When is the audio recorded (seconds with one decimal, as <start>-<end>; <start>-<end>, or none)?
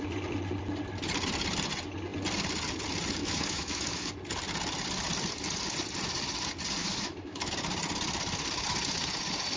0.0-3.2; 4.1-6.8; 7.5-9.6